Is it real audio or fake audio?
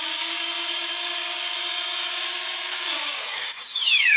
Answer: fake